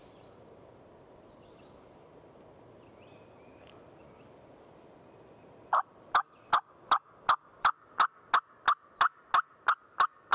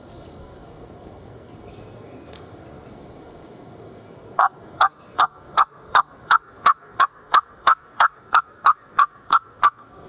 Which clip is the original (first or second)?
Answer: first